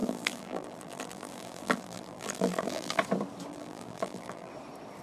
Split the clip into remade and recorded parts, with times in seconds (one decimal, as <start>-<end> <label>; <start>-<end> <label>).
0.0-3.0 remade; 3.0-3.5 recorded; 3.5-4.5 remade; 4.5-5.0 recorded